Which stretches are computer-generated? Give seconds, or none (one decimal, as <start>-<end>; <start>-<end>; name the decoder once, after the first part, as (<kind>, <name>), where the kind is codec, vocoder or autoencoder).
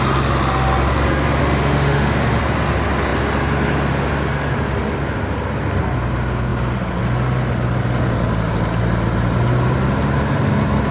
1.4-2.4 (autoencoder, DAC-VAE)